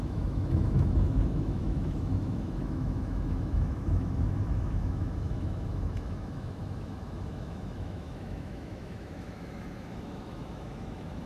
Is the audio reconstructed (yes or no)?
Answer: yes